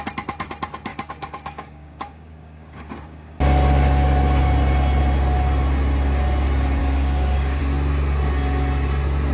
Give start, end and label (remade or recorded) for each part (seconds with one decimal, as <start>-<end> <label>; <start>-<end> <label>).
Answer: 0.0-0.9 recorded; 0.9-3.3 remade; 3.3-6.8 recorded; 6.8-7.6 remade; 7.6-9.3 recorded